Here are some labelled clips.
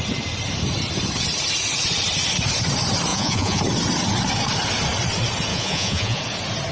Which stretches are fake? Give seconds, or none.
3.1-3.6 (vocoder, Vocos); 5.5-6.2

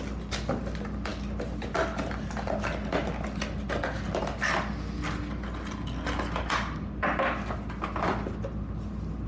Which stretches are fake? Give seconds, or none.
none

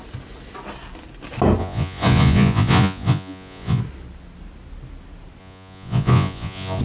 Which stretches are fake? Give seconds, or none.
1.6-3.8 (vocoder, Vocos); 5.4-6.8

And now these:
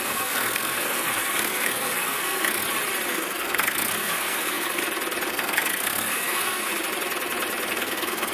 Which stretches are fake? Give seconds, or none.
0.0-2.6 (codec, SNAC); 3.1-4.8; 5.3-6.7; 7.7-8.3

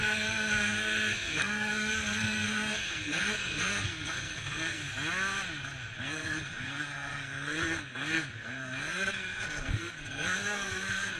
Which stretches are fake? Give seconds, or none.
0.0-4.8 (codec, SNAC); 6.0-11.2